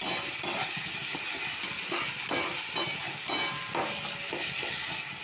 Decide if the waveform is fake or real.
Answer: real